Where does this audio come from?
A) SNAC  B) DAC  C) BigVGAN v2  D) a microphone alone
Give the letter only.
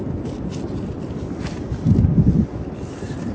D